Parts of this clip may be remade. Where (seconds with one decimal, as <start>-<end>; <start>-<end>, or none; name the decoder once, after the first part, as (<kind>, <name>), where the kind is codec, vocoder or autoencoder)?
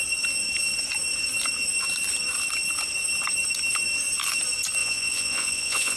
4.8-6.0 (vocoder, Vocos)